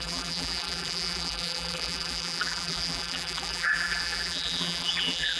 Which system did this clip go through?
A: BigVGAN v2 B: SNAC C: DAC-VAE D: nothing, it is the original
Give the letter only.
A